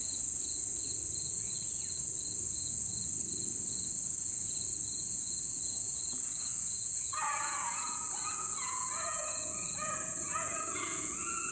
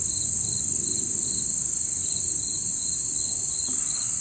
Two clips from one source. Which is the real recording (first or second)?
second